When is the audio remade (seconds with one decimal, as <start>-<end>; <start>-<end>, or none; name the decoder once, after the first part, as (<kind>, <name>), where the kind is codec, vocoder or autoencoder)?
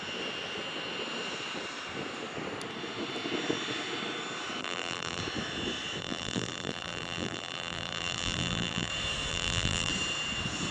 4.6-5.2 (vocoder, BigVGAN v2); 6.0-8.9; 9.3-9.9